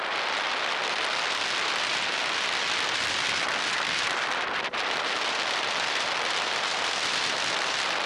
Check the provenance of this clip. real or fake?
fake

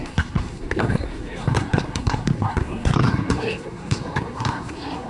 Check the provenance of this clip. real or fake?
fake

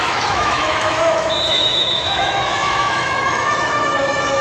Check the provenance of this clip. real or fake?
fake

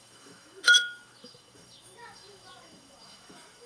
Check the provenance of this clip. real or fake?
fake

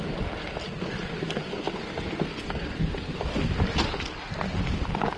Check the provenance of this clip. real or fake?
real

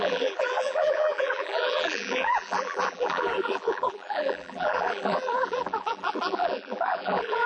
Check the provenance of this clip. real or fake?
fake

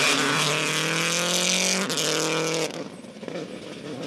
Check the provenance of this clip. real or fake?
real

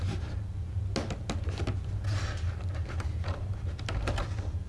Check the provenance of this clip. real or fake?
real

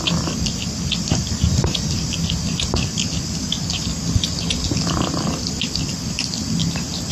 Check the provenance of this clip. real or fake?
real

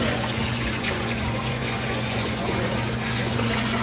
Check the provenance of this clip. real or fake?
fake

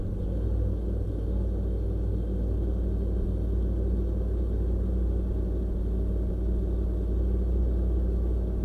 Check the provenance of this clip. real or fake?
real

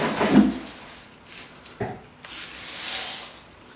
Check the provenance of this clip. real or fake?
real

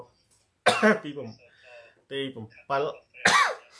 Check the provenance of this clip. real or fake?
real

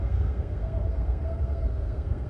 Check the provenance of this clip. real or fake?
fake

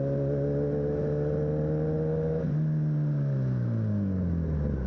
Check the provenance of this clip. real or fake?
real